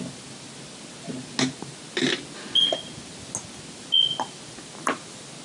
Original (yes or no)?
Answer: yes